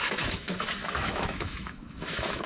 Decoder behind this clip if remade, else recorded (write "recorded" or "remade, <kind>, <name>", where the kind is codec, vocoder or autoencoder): remade, autoencoder, DAC-VAE